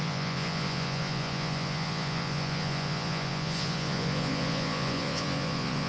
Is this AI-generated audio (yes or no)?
yes